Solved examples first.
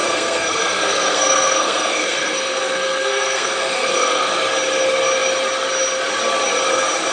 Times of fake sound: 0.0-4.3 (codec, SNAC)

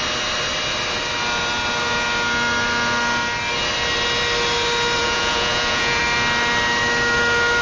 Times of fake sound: 5.0-6.0 (vocoder, Vocos)

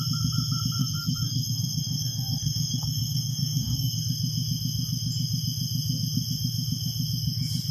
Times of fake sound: 0.8-4.0 (codec, SNAC)

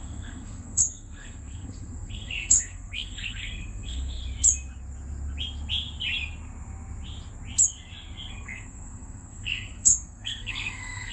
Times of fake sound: 0.0-4.2 (codec, SNAC); 8.3-11.1

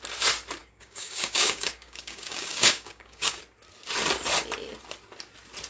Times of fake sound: 0.6-3.4 (codec, DAC)

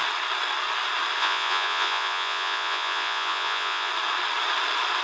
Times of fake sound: 1.2-3.9 (vocoder, Vocos)